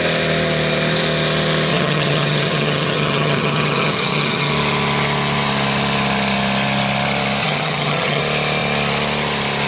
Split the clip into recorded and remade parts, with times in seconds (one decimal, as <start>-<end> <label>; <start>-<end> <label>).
0.0-1.7 recorded; 1.7-4.5 remade; 4.5-7.4 recorded; 7.4-8.2 remade; 8.2-9.7 recorded